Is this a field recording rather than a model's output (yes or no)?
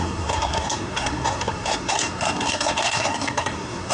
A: no